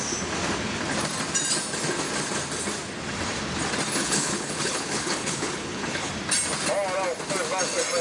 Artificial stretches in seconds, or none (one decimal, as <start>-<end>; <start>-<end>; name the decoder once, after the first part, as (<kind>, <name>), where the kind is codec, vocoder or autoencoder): 4.0-6.1 (codec, HILCodec)